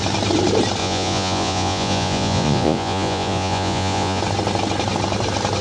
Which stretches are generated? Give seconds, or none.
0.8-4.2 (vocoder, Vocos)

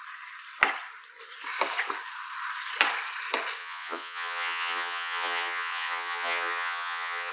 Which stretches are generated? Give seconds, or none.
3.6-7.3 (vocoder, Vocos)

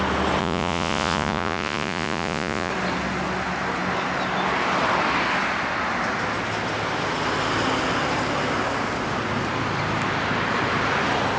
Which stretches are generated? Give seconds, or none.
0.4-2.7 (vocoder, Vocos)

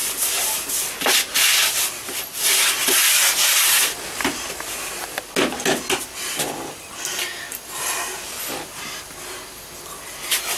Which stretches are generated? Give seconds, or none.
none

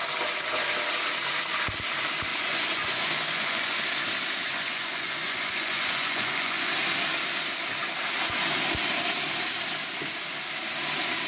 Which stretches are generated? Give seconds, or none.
2.3-3.8 (vocoder, Vocos); 4.5-6.7

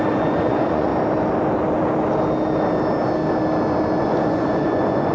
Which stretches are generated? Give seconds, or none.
0.0-0.9 (vocoder, Vocos); 4.0-5.1